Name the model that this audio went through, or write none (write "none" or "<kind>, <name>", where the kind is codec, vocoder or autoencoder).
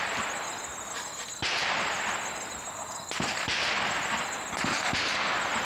none